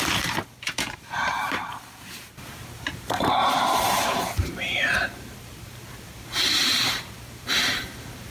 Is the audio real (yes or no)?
no